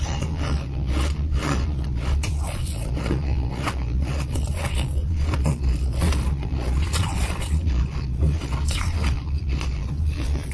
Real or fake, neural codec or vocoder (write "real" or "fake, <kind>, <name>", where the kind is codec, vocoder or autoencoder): fake, vocoder, Vocos